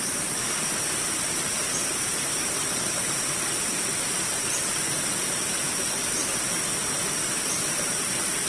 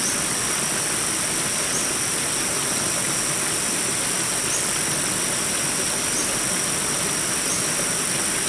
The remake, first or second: first